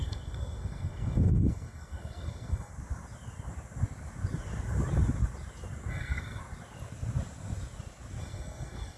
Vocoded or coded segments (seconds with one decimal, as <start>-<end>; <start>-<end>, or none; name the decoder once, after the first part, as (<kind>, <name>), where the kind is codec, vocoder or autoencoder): 0.0-2.7 (codec, SNAC); 5.9-6.4; 8.2-9.0